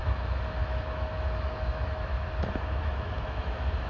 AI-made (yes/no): yes